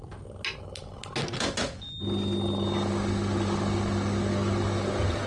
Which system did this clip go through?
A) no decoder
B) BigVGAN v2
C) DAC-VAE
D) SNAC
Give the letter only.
A